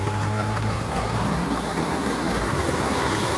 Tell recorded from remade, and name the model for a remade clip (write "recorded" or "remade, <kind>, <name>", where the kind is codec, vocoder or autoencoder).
remade, codec, SNAC